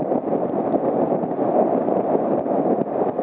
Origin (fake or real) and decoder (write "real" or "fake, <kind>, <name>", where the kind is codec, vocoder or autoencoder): real